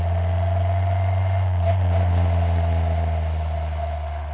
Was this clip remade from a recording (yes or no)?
no